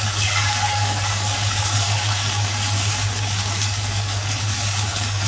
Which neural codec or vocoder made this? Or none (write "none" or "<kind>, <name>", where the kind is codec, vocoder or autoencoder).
codec, DAC